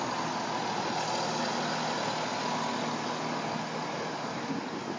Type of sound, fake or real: real